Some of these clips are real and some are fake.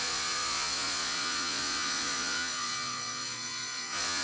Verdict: fake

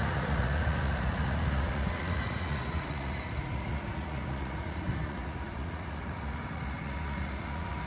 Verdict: fake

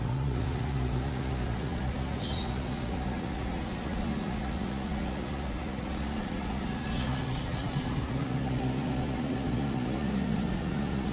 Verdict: fake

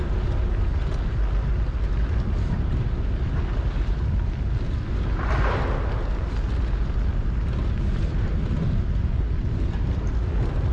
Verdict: real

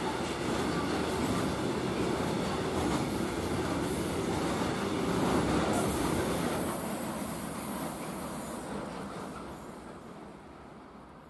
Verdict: real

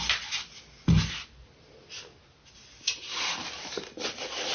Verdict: real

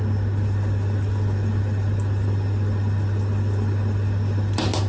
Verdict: real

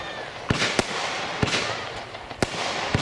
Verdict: real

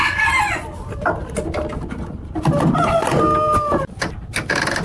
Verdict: real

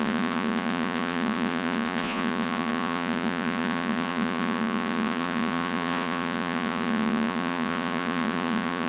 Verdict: fake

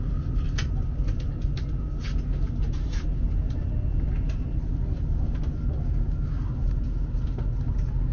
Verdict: real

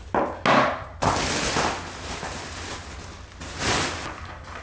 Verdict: real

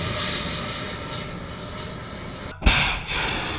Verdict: real